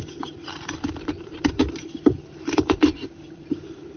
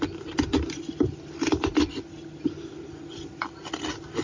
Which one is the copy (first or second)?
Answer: first